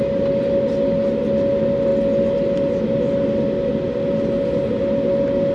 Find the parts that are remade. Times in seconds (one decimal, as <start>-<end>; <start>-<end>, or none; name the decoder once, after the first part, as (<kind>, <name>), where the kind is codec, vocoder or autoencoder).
none